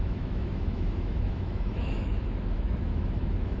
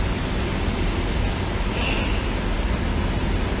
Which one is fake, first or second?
first